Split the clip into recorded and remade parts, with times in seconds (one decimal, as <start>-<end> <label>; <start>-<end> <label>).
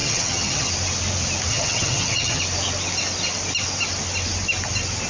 0.0-0.7 remade; 0.7-1.5 recorded; 1.5-2.4 remade; 2.4-5.1 recorded